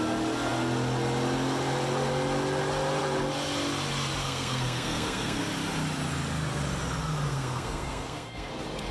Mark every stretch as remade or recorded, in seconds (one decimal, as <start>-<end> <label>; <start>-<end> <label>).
0.0-4.2 recorded; 4.2-5.4 remade; 5.4-7.3 recorded; 7.3-8.5 remade; 8.5-8.9 recorded